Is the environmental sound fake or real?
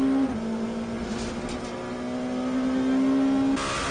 real